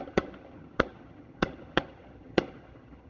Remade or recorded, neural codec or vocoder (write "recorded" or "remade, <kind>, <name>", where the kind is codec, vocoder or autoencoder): remade, vocoder, HiFi-GAN